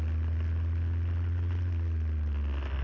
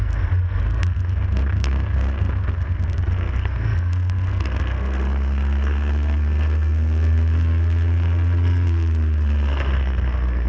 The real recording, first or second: first